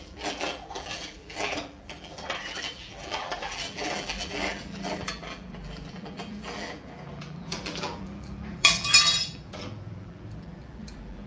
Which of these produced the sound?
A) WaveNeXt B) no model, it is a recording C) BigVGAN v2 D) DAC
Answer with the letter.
C